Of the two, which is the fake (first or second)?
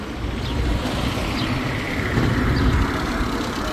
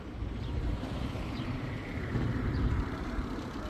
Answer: second